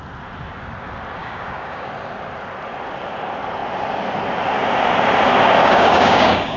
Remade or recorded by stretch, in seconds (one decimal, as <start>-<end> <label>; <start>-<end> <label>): 0.0-1.2 recorded; 1.2-1.9 remade; 1.9-5.6 recorded; 5.6-6.6 remade